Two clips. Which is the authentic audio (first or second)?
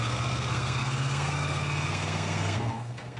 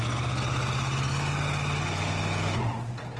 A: second